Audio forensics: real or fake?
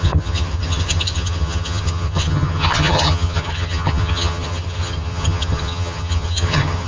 fake